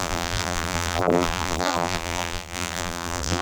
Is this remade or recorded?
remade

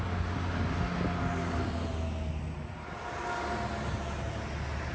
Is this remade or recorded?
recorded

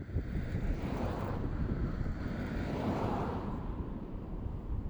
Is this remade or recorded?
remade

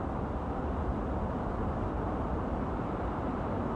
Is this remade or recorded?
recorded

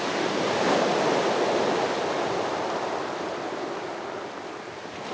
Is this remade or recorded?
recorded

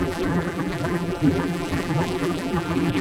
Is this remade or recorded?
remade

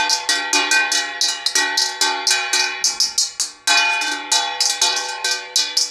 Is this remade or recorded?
recorded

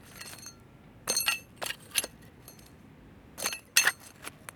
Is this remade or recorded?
recorded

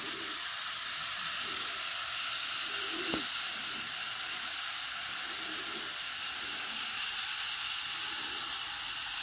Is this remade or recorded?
recorded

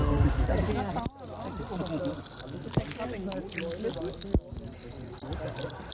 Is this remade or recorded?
recorded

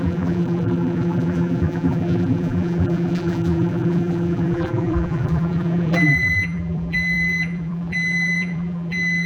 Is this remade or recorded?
remade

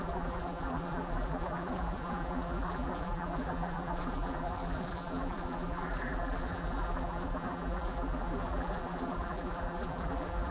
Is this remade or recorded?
remade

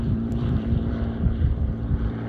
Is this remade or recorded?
remade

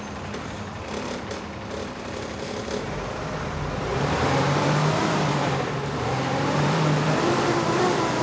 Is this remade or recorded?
remade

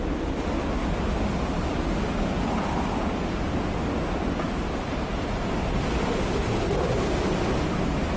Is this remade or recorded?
recorded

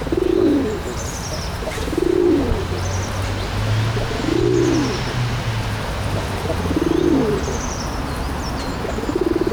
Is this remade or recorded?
recorded